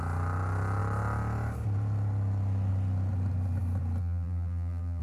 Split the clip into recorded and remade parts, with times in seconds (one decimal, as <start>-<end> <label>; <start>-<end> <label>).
0.0-4.0 recorded; 4.0-5.0 remade